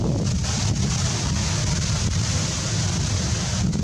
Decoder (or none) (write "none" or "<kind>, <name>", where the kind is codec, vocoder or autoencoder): none